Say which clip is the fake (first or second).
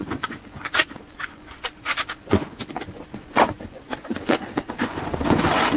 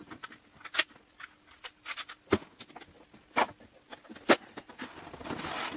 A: first